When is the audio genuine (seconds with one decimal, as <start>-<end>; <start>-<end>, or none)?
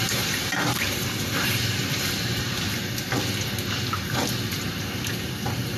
2.8-4.8